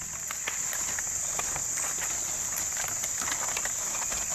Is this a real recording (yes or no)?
yes